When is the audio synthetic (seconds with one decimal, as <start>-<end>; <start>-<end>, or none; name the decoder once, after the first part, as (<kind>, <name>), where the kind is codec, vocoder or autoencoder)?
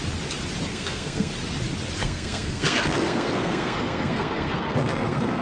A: 0.7-1.3 (codec, SNAC); 2.0-5.4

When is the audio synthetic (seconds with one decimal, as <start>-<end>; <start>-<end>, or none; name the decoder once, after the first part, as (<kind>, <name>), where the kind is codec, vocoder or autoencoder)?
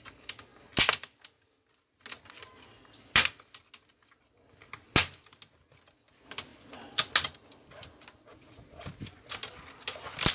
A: none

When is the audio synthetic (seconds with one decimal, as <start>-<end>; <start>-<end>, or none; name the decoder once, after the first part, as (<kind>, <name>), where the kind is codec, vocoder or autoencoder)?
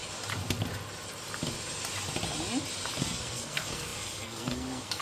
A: 3.0-5.0 (codec, SNAC)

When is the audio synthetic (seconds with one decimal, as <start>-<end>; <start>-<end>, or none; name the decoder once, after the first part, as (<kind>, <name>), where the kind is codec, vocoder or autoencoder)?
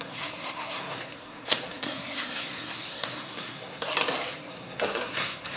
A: 0.0-3.9 (codec, SNAC); 4.5-5.6